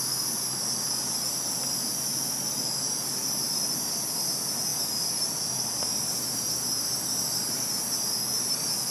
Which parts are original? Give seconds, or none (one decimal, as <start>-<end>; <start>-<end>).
0.0-8.9